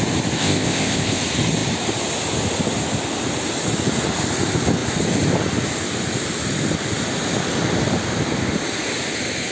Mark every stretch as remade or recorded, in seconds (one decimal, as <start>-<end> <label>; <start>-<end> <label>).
0.0-0.4 recorded; 0.4-1.2 remade; 1.2-9.5 recorded